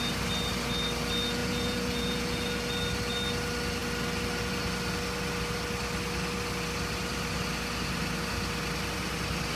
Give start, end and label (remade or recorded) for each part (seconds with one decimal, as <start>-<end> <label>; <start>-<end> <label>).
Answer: 0.0-1.4 recorded; 1.4-2.5 remade; 2.5-9.6 recorded